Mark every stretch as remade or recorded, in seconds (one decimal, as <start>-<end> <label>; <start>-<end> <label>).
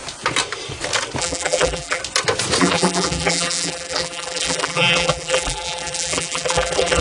0.0-1.2 recorded; 1.2-2.0 remade; 2.0-2.6 recorded; 2.6-7.0 remade